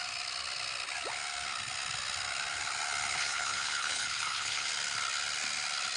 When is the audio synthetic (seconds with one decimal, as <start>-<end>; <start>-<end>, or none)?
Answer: 3.1-4.7